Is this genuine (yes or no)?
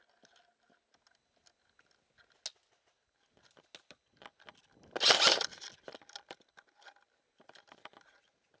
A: yes